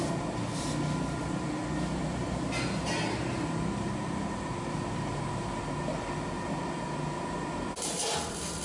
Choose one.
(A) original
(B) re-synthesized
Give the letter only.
A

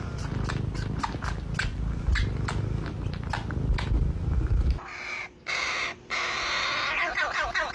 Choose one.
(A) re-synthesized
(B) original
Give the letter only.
B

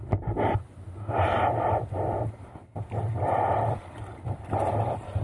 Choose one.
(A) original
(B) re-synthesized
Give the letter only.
A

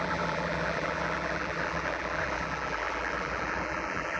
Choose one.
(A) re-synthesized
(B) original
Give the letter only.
A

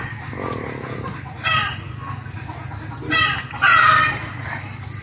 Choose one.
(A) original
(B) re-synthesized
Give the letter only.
A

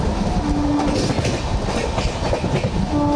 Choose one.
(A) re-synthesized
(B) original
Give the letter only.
B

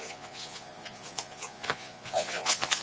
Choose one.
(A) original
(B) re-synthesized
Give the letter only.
B